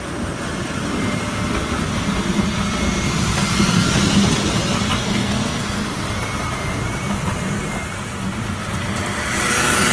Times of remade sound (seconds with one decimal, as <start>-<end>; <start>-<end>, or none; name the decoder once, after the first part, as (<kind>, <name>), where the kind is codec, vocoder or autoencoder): 5.0-5.8 (codec, SNAC)